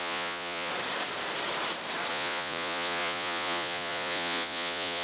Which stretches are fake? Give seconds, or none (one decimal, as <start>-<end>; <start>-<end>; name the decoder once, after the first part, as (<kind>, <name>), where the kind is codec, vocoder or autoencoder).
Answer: 0.0-0.7 (vocoder, Vocos); 2.1-5.0